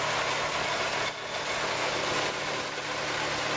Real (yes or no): yes